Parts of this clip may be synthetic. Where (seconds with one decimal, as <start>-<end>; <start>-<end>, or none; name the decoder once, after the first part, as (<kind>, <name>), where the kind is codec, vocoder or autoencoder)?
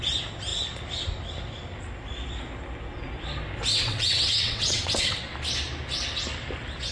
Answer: 3.7-5.2 (vocoder, WaveNeXt)